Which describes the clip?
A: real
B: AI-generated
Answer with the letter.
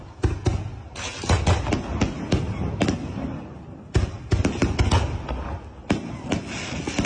A